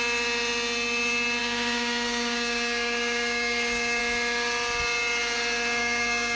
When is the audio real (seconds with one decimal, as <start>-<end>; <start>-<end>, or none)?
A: 0.0-1.4; 4.0-5.8